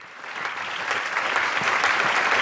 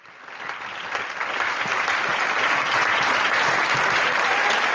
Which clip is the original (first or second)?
second